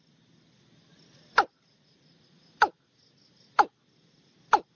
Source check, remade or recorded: recorded